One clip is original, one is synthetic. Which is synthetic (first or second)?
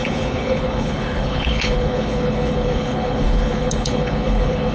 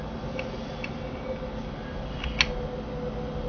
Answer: first